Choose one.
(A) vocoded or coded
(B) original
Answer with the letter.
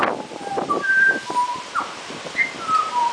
B